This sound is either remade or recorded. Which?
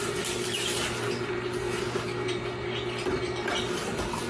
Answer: recorded